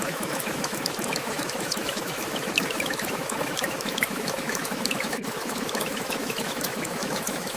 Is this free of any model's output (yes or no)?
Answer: no